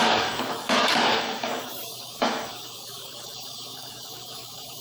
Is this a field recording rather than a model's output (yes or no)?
no